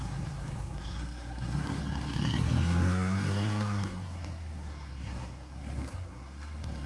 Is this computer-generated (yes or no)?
yes